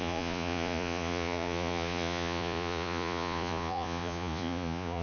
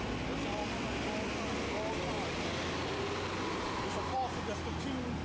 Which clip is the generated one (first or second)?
first